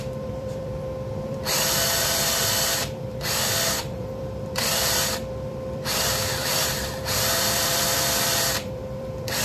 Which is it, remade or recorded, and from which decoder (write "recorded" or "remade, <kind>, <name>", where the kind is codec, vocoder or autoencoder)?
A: remade, vocoder, BigVGAN v2